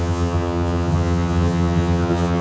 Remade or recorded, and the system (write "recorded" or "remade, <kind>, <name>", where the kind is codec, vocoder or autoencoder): remade, vocoder, HiFi-GAN